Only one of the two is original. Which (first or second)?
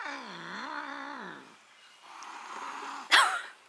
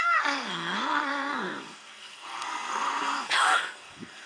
first